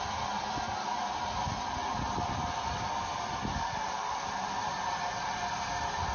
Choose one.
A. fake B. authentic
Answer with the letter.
B